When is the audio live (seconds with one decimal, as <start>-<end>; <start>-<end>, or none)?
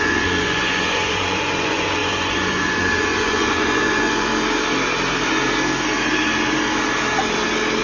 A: 4.3-7.8